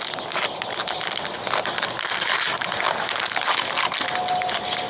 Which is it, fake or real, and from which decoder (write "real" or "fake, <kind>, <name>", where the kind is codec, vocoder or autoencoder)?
real